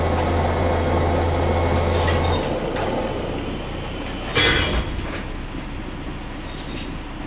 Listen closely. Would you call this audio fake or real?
real